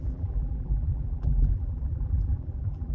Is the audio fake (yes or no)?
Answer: yes